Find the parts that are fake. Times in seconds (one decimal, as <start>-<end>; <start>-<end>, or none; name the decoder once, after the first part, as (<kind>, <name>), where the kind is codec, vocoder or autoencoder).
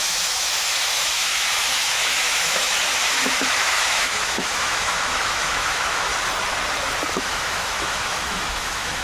0.0-6.1 (autoencoder, DAC-VAE); 7.2-9.0